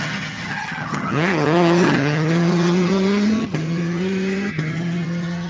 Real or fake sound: fake